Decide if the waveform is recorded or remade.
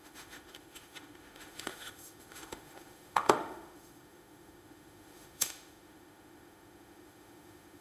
remade